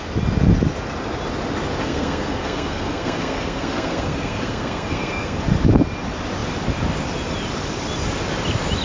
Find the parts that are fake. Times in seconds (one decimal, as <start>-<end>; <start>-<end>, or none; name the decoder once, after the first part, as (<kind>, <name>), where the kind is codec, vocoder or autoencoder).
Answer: 1.8-5.4 (codec, SNAC)

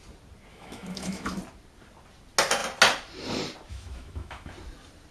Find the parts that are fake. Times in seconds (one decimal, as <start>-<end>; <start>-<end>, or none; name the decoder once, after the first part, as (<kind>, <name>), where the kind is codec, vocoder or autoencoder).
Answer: 0.5-1.4 (autoencoder, DAC-VAE); 3.7-4.5

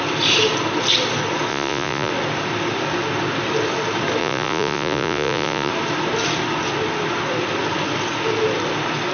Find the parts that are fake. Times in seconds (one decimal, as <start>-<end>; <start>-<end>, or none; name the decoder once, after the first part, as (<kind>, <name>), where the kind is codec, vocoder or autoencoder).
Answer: 1.5-2.1 (vocoder, Vocos); 4.2-5.7

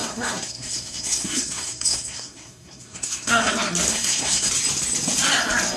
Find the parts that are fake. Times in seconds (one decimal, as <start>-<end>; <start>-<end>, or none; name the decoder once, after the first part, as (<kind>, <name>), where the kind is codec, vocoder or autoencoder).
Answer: 0.0-3.5 (codec, SNAC); 3.9-4.5

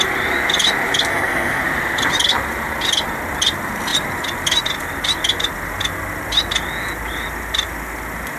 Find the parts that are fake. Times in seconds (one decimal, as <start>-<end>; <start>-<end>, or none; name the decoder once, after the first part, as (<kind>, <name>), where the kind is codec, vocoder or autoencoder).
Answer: 1.1-1.6 (codec, SNAC)

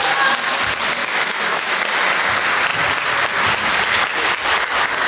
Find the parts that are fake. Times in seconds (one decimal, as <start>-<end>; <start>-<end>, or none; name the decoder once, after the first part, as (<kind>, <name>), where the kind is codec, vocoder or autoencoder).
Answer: 1.0-1.8 (autoencoder, DAC-VAE)

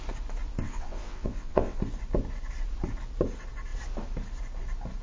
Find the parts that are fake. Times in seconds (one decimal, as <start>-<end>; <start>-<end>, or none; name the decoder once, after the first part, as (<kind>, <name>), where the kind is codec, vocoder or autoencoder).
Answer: 0.6-1.8 (vocoder, WaveNeXt)

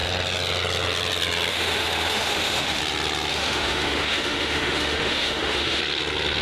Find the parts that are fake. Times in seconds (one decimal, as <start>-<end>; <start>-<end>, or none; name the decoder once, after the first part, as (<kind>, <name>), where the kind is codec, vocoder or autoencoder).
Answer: 1.5-2.8 (autoencoder, DAC-VAE); 3.3-5.8